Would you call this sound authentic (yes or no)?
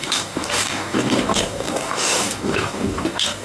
no